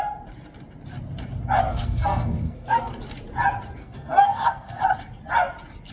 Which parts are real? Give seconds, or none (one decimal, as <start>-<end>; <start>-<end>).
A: 0.0-1.7; 2.9-3.8; 4.8-5.9